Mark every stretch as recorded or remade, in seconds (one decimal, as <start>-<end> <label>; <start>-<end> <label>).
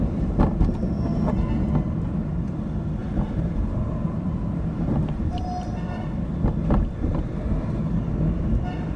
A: 0.0-3.0 recorded; 3.0-6.4 remade; 6.4-9.0 recorded